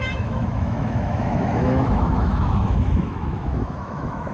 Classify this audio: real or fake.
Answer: fake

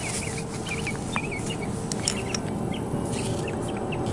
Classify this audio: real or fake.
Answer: real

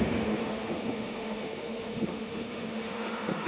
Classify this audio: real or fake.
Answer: fake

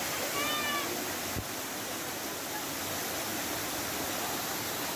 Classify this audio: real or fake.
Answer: real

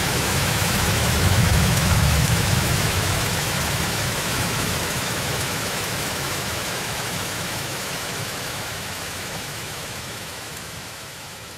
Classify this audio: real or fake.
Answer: fake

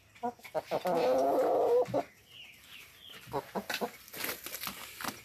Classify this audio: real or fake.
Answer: real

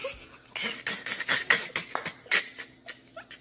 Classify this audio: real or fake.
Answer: real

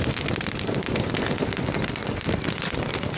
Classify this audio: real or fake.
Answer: real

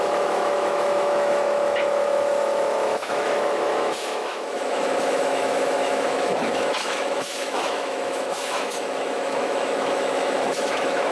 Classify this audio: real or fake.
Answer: fake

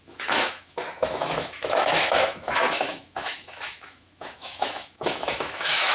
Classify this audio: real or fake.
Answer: fake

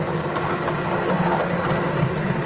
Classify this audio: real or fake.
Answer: real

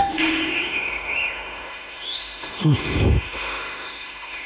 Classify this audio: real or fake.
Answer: fake